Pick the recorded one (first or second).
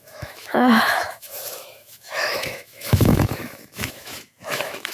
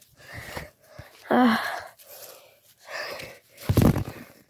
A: second